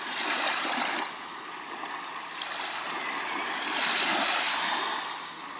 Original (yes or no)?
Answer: yes